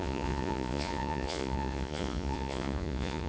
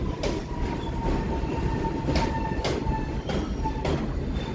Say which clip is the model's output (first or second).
first